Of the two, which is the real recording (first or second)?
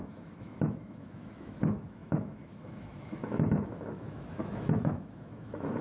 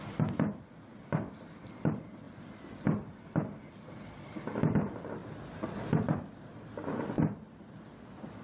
second